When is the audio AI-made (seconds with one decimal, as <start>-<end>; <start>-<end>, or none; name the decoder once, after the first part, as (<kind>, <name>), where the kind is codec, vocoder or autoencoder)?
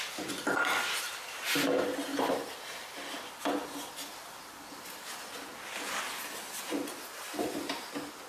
none